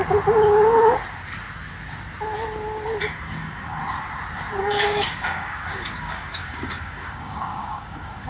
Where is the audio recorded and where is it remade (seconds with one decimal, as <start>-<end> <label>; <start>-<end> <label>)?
0.0-3.1 recorded; 3.1-3.8 remade; 3.8-4.6 recorded; 4.6-8.3 remade